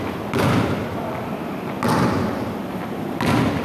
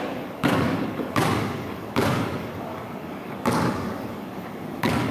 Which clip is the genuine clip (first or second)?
first